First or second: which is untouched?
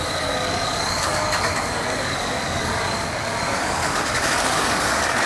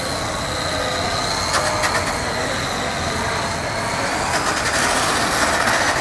second